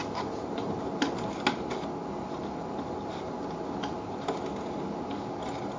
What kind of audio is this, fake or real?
real